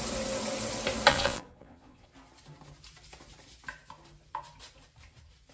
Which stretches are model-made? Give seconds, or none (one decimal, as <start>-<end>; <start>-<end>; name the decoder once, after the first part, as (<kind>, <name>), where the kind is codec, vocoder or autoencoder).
1.1-2.1 (vocoder, Vocos)